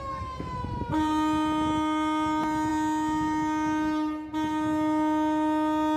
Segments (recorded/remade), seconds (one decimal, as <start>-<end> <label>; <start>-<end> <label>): 0.0-6.0 recorded

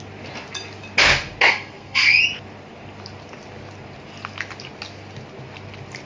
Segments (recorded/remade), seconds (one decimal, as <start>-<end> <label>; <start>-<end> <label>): 0.0-1.5 recorded; 1.5-2.2 remade; 2.2-6.1 recorded

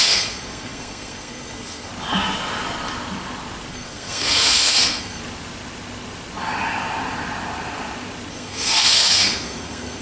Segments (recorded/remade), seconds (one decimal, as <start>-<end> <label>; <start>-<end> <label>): 0.0-1.9 remade; 1.9-3.7 recorded; 3.7-5.2 remade; 5.2-8.3 recorded; 8.3-10.0 remade

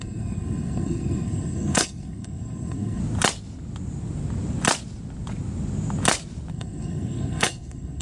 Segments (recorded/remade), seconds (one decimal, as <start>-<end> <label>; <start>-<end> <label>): 0.0-3.0 remade; 3.0-6.5 recorded; 6.5-8.0 remade

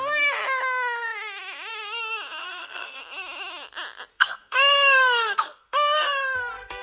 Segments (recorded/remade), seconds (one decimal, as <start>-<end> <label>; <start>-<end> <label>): 0.0-2.4 recorded; 2.4-3.0 remade; 3.0-4.1 recorded; 4.1-6.8 remade

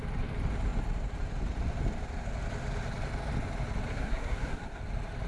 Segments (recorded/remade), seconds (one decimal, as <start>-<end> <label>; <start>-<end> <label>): 0.0-3.9 recorded; 3.9-4.8 remade; 4.8-5.3 recorded